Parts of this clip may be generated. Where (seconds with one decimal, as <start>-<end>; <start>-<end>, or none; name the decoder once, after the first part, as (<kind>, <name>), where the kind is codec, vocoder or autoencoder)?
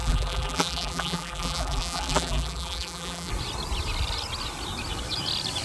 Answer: 0.0-3.3 (vocoder, BigVGAN v2)